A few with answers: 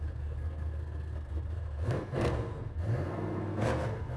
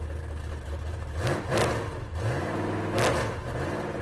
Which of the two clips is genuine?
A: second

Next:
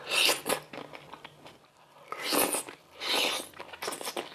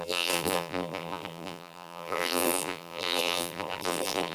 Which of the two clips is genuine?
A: first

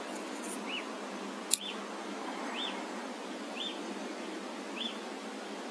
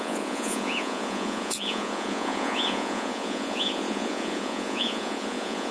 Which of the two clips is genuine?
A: first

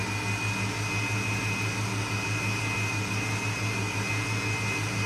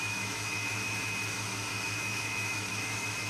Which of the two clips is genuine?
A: first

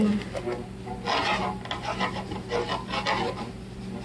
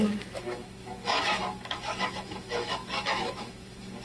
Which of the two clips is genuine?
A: first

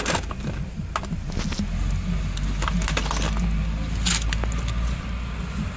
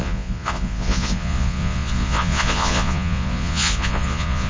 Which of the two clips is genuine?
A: first